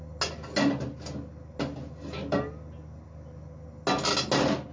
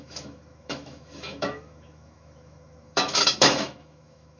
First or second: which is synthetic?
second